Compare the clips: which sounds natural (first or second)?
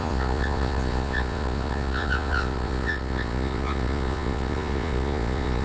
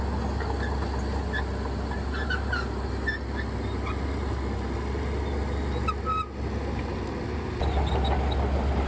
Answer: second